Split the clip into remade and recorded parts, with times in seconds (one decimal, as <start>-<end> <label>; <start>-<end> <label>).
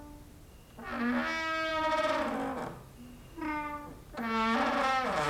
0.0-5.3 recorded